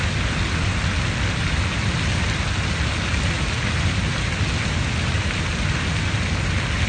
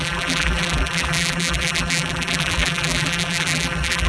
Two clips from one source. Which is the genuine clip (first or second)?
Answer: first